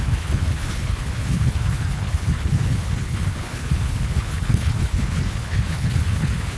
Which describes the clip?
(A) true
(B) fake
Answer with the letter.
B